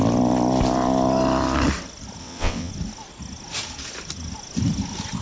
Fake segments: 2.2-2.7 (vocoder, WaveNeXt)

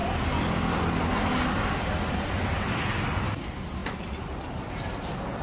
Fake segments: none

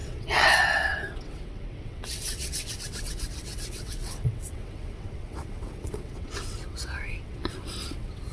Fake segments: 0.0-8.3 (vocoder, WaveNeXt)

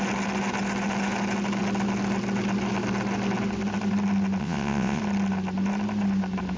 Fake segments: 4.4-5.0 (vocoder, WaveNeXt)

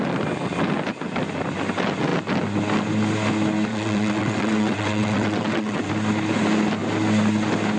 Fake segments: 3.7-5.9 (vocoder, WaveNeXt)

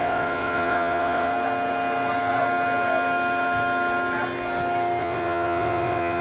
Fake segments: 0.0-1.3 (vocoder, WaveNeXt); 5.0-6.2